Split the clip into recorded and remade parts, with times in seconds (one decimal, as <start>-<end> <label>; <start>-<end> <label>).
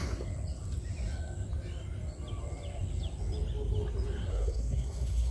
0.0-4.3 recorded; 4.3-5.3 remade